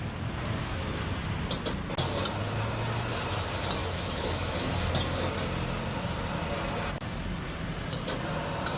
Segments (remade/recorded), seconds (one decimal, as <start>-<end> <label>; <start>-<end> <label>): 0.0-0.6 recorded; 0.6-1.1 remade; 1.1-3.8 recorded; 3.8-4.7 remade; 4.7-8.8 recorded